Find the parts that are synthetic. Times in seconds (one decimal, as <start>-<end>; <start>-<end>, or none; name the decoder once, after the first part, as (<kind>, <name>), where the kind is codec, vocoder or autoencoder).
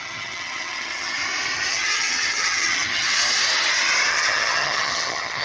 0.0-1.2 (vocoder, HiFi-GAN); 1.7-3.2; 4.1-5.4